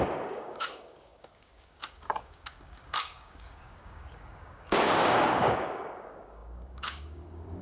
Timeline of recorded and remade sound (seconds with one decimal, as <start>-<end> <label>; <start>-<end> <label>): 0.0-7.6 remade